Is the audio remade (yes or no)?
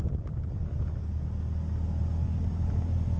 no